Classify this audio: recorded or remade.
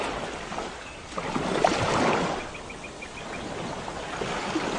recorded